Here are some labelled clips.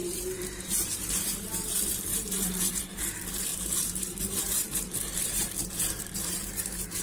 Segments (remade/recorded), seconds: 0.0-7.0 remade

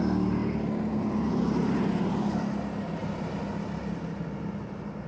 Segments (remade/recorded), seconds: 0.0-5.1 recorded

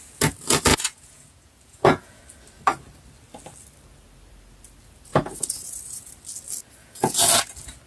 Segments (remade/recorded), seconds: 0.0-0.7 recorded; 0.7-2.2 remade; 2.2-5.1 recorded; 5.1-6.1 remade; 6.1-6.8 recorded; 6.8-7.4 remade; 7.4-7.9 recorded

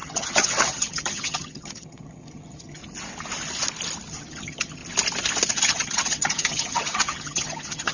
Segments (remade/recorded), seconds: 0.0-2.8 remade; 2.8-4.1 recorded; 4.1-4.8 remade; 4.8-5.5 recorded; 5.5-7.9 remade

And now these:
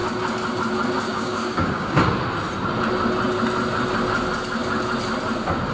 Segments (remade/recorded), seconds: 0.0-1.1 recorded; 1.1-2.1 remade; 2.1-5.7 recorded

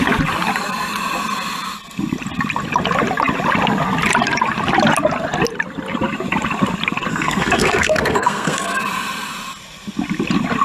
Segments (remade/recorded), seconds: 0.0-7.1 recorded; 7.1-8.8 remade; 8.8-10.6 recorded